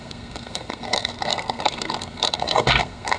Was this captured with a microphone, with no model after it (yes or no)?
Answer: no